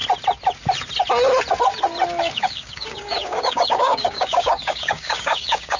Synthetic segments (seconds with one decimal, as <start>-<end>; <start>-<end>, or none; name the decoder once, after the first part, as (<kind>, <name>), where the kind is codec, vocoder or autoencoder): 2.2-5.8 (codec, DAC)